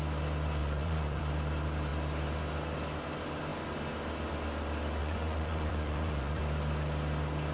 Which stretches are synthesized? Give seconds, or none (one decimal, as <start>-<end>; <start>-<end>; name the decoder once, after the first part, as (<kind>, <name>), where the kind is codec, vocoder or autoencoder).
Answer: 0.6-1.2 (vocoder, Vocos); 5.0-6.4